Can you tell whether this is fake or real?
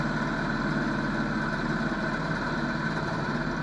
real